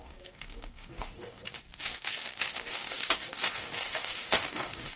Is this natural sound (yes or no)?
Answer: no